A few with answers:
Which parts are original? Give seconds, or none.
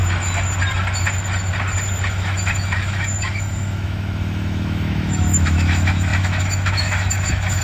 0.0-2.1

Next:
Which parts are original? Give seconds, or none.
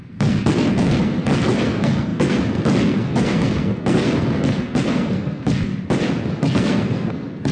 5.7-6.4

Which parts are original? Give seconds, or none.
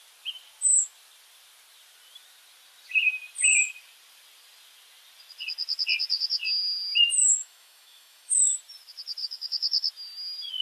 0.0-7.4; 8.5-9.2; 9.9-10.6